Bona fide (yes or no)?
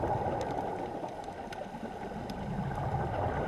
yes